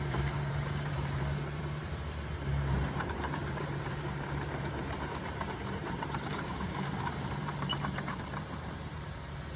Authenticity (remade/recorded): remade